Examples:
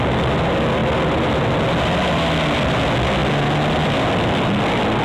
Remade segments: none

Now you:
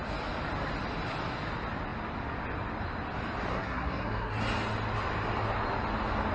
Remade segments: 3.5-4.4 (codec, SNAC)

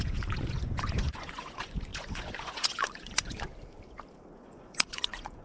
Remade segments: 0.0-3.5 (vocoder, Vocos); 4.4-5.4

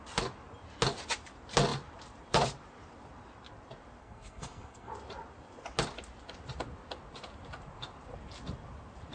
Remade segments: 4.0-4.9 (codec, SNAC)

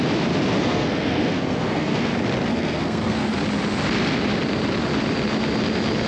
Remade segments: 0.6-2.1 (codec, SNAC); 2.5-3.3

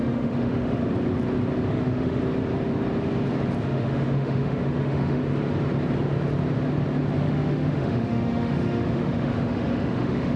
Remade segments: 0.0-0.8 (autoencoder, DAC-VAE); 1.7-2.2; 3.6-5.2; 7.2-10.4

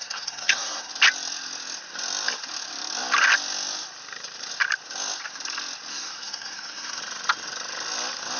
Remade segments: 0.0-0.9 (codec, SNAC); 5.9-7.0

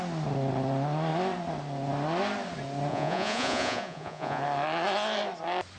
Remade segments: 2.9-4.4 (vocoder, Vocos)